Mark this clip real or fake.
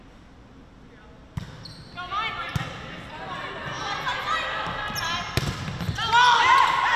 real